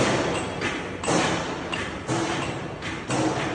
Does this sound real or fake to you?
real